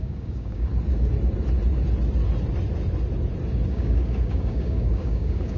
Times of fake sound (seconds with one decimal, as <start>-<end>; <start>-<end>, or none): 0.0-0.7; 3.7-5.6